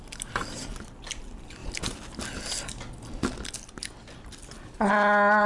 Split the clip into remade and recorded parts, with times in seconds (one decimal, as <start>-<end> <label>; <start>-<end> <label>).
0.0-5.5 recorded